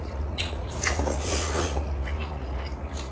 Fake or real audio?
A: fake